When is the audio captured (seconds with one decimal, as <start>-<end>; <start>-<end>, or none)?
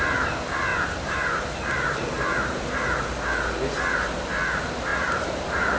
0.0-0.7; 3.2-4.9